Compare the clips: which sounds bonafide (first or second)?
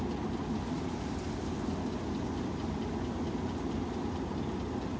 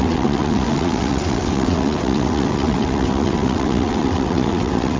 first